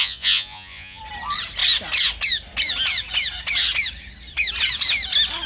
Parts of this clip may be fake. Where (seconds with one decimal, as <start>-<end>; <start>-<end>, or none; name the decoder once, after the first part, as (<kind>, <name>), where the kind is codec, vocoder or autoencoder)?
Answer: 0.0-1.0 (vocoder, Vocos)